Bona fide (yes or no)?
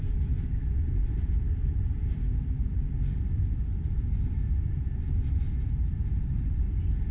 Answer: no